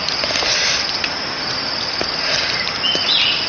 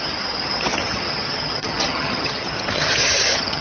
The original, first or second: first